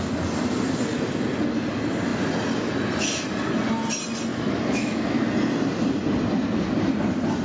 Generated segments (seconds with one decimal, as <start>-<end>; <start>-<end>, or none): 4.3-5.3